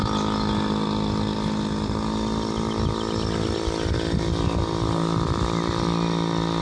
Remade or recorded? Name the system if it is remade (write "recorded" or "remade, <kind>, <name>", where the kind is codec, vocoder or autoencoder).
recorded